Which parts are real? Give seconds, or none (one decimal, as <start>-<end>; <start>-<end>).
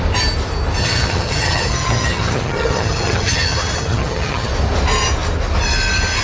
0.0-0.8; 4.5-6.2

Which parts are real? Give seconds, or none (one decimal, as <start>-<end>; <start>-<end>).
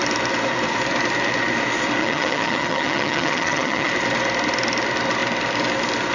0.0-2.0; 3.9-6.1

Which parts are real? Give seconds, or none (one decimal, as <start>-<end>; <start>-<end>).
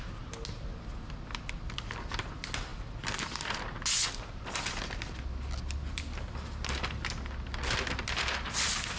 0.0-9.0